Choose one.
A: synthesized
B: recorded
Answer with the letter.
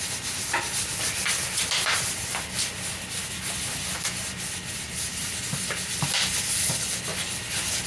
B